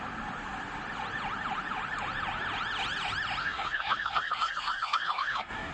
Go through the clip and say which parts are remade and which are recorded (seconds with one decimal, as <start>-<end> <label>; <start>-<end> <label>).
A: 0.0-3.4 recorded; 3.4-5.7 remade